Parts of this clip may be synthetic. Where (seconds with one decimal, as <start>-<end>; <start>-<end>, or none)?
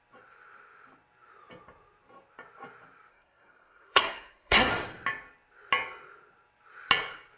3.1-4.7